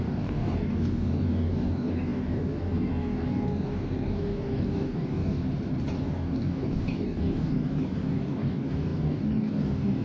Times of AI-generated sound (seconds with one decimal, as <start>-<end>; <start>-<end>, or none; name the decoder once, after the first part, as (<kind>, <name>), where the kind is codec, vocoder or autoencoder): 0.0-5.4 (codec, DAC); 6.0-10.0